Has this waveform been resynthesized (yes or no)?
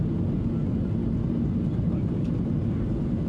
no